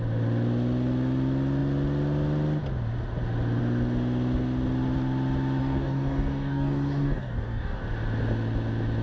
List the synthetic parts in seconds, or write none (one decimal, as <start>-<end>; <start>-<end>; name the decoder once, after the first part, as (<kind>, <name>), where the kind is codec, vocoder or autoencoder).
5.6-7.8 (codec, DAC)